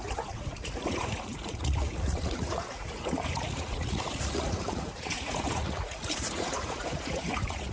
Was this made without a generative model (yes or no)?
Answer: no